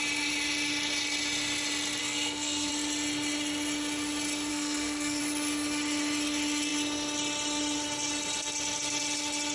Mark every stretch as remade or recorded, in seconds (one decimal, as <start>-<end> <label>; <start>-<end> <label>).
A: 0.0-2.0 recorded; 2.0-2.7 remade; 2.7-4.5 recorded; 4.5-5.2 remade; 5.2-9.5 recorded